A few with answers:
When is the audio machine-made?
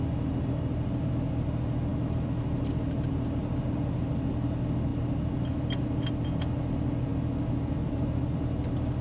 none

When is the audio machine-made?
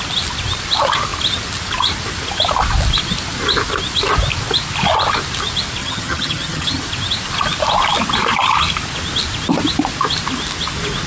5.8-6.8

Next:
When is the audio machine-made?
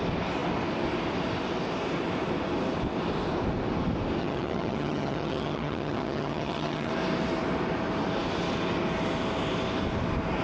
4.2-6.9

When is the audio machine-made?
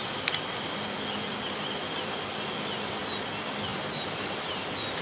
3.7-4.4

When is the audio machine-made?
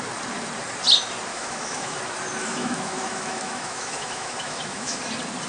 1.3-2.0; 2.4-5.0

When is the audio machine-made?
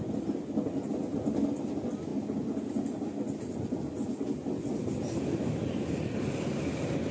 none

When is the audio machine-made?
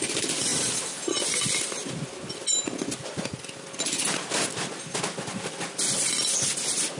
none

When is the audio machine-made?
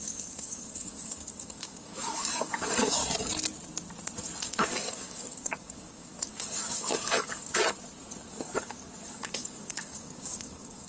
0.0-3.0; 4.4-7.6; 8.3-10.9